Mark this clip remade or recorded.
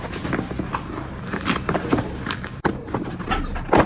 recorded